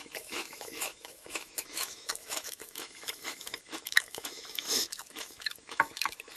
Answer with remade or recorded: remade